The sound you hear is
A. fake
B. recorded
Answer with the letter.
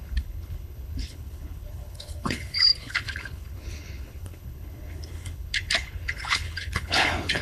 A